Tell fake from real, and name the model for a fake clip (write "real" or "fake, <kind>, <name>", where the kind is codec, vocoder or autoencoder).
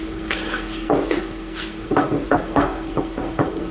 fake, codec, SNAC